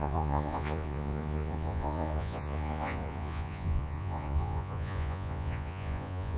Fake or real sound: fake